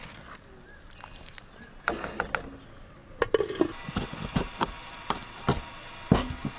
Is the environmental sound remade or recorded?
recorded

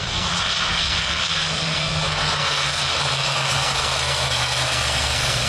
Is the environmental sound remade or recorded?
remade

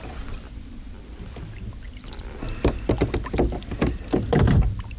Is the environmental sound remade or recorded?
recorded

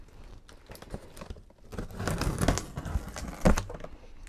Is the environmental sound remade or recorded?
recorded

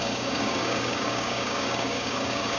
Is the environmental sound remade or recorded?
remade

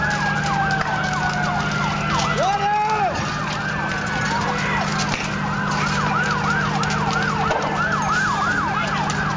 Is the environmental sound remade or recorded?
recorded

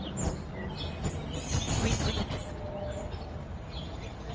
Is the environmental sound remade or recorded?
recorded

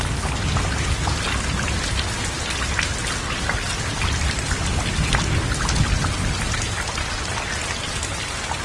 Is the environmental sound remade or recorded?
recorded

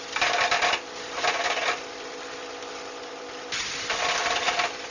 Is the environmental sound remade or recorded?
recorded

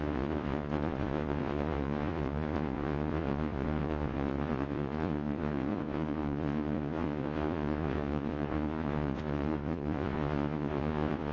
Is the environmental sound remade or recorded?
remade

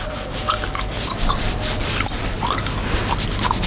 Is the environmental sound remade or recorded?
recorded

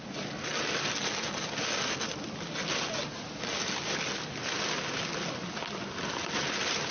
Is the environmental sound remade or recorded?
recorded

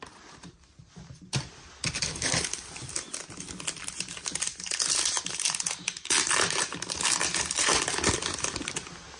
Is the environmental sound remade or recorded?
recorded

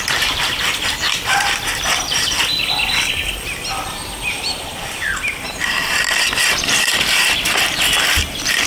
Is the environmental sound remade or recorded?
remade